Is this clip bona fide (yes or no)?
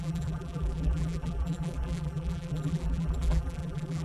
no